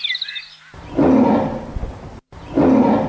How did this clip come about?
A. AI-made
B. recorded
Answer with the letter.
B